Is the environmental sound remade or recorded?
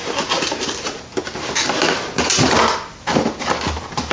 recorded